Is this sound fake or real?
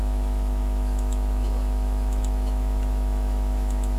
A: fake